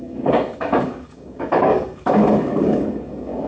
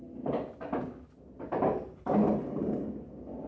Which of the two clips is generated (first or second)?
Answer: first